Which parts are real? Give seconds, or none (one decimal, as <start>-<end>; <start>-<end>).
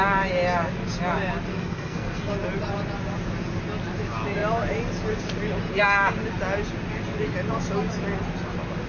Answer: 0.0-1.5; 2.3-8.9